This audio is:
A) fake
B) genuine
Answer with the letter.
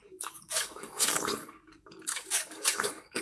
A